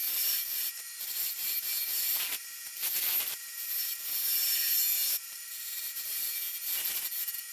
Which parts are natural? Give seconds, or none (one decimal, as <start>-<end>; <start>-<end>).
0.0-1.9; 6.3-7.5